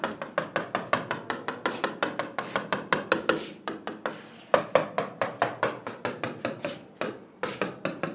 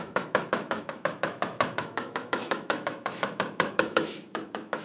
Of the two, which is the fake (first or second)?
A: second